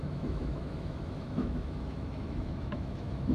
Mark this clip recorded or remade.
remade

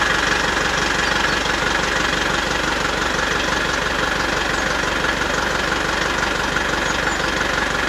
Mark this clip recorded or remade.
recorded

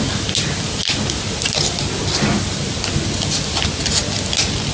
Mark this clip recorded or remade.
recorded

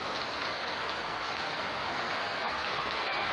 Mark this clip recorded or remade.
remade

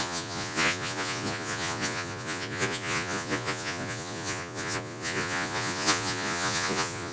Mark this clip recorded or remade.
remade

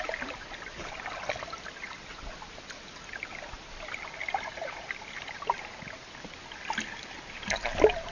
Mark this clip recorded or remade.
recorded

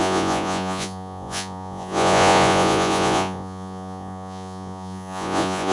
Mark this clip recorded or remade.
remade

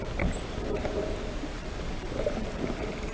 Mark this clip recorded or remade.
remade